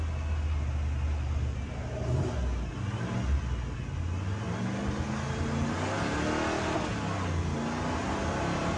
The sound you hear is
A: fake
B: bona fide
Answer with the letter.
B